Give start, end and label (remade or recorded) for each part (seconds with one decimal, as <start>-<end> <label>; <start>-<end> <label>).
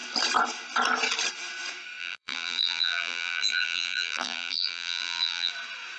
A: 0.0-2.0 recorded; 2.0-5.5 remade; 5.5-6.0 recorded